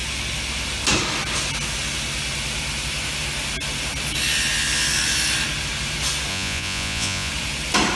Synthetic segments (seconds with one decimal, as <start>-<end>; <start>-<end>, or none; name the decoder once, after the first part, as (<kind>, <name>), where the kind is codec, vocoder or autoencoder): 6.3-7.3 (vocoder, Vocos)